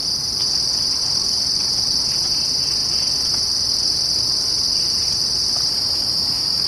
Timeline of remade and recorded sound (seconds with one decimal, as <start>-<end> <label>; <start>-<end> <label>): 0.0-6.7 recorded